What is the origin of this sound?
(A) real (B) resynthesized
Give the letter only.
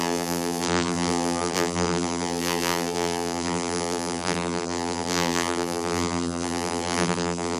B